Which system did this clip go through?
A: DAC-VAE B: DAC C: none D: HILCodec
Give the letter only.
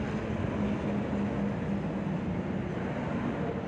C